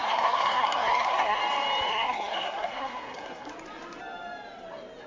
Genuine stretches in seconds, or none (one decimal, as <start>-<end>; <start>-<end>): 1.4-1.9; 3.5-5.1